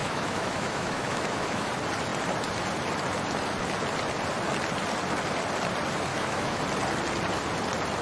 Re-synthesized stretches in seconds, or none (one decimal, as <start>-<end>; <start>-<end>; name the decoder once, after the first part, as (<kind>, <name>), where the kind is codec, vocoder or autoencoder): 0.0-1.7 (autoencoder, DAC-VAE); 6.1-6.6